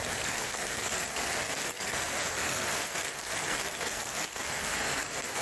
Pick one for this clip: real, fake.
fake